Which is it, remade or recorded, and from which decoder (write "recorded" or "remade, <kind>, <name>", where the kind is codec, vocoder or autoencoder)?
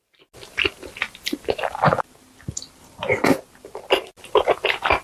recorded